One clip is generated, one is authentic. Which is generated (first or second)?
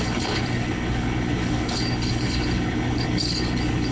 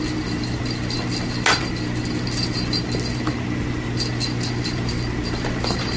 first